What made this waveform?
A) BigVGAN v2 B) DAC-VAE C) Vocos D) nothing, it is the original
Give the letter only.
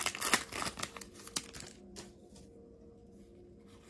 D